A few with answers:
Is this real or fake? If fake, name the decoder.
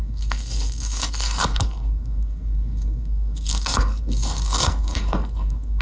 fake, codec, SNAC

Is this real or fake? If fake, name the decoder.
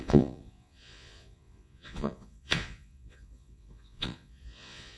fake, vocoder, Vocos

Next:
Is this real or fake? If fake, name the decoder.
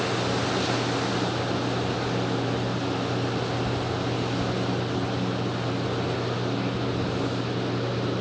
real